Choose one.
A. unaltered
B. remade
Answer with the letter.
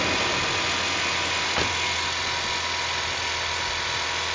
A